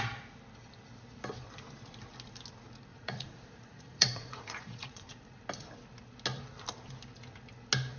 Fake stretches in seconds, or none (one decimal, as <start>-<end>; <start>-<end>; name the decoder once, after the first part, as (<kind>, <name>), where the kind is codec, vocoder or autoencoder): 2.9-5.4 (vocoder, Vocos)